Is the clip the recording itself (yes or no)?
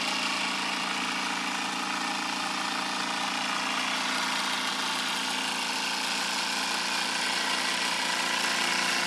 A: yes